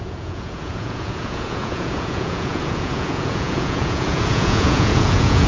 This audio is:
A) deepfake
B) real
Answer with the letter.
A